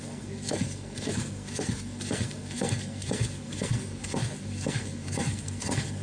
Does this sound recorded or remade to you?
remade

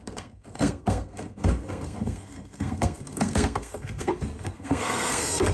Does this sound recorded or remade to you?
remade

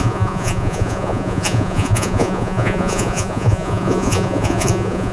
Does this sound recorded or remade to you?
remade